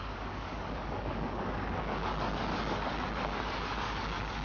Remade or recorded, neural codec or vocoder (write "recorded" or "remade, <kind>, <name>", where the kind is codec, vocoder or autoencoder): remade, codec, DAC